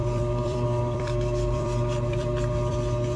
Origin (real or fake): fake